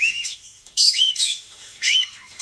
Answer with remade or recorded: remade